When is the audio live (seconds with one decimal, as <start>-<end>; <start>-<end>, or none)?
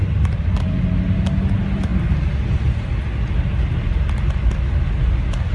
0.0-5.5